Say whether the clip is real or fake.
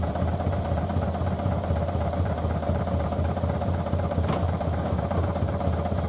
fake